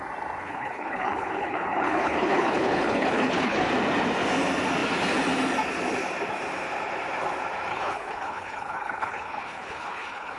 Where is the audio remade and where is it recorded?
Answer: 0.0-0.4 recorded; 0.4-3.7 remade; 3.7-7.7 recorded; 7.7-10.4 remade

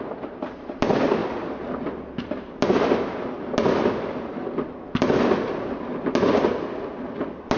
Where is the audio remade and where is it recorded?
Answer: 0.0-7.6 recorded

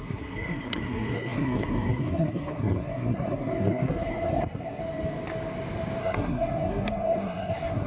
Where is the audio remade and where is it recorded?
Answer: 0.0-4.8 remade; 4.8-6.0 recorded; 6.0-7.9 remade

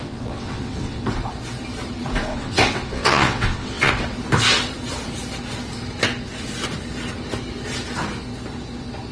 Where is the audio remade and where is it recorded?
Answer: 0.0-1.0 remade; 1.0-2.3 recorded; 2.3-3.9 remade; 3.9-9.1 recorded

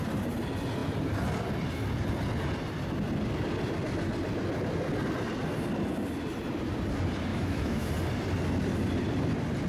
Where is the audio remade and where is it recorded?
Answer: 0.0-7.3 recorded; 7.3-7.9 remade; 7.9-9.7 recorded

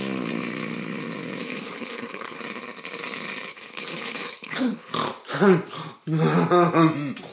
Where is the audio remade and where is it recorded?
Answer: 0.0-1.4 recorded; 1.4-2.4 remade; 2.4-3.5 recorded; 3.5-4.9 remade; 4.9-7.3 recorded

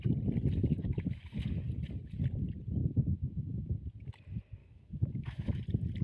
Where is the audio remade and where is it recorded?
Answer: 0.0-0.7 recorded; 0.7-1.2 remade; 1.2-2.8 recorded; 2.8-3.7 remade; 3.7-4.6 recorded; 4.6-5.6 remade; 5.6-6.0 recorded